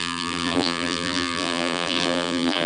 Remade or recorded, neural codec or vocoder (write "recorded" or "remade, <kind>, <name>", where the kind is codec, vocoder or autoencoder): remade, vocoder, BigVGAN v2